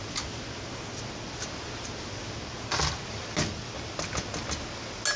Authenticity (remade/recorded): recorded